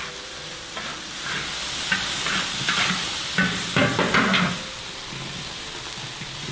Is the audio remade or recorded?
recorded